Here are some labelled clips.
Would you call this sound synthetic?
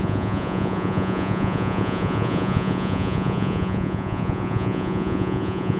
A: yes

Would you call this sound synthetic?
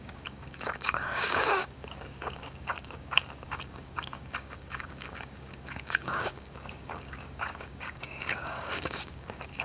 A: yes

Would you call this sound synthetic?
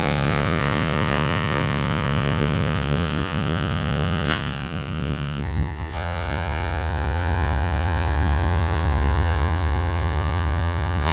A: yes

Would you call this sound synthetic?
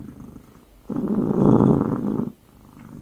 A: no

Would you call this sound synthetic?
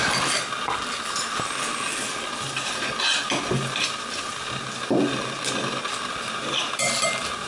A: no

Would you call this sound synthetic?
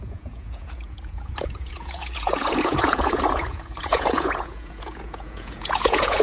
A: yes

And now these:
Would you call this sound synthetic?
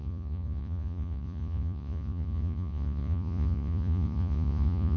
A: yes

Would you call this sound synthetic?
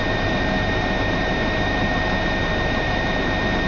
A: yes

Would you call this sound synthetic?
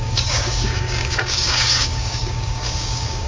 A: yes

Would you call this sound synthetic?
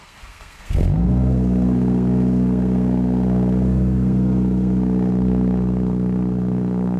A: yes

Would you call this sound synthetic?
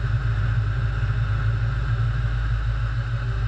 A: no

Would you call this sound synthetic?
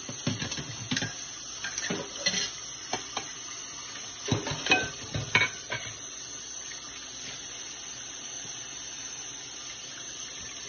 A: no